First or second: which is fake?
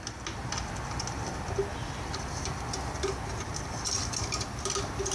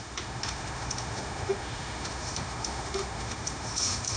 second